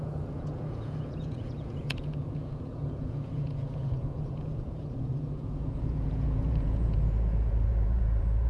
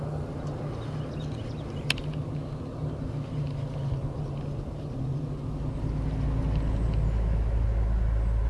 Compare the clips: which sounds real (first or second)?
second